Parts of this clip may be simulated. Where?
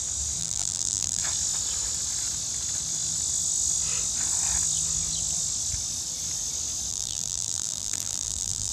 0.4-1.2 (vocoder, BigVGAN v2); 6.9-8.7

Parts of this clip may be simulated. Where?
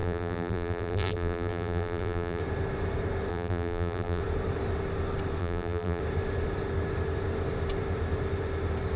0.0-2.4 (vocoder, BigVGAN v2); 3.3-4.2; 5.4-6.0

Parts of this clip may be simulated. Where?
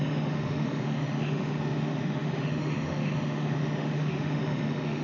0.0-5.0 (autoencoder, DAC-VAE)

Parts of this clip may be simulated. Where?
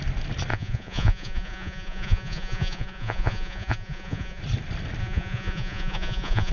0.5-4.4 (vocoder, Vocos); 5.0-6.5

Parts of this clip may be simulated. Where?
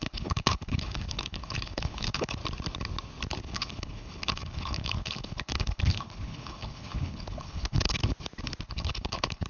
0.0-2.4 (codec, HILCodec); 3.4-8.0; 8.6-9.5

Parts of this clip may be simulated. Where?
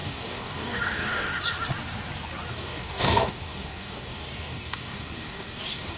0.0-1.3 (codec, DAC); 2.5-6.0